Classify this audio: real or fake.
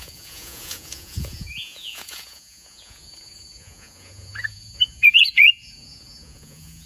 fake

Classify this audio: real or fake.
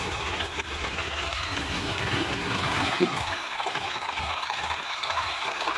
fake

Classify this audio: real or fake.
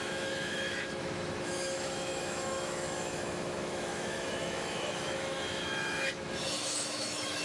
fake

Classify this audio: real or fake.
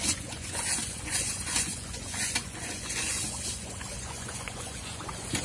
fake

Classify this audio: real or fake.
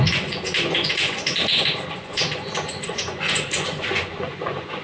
fake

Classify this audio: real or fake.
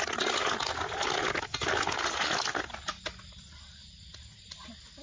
real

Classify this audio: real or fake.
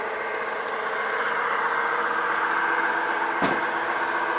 real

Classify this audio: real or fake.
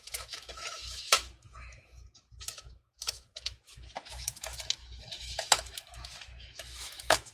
fake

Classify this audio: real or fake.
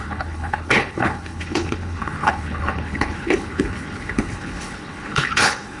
fake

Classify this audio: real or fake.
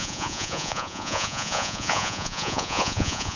fake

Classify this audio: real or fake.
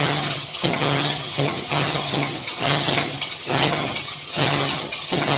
fake